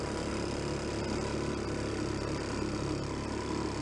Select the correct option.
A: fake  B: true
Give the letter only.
B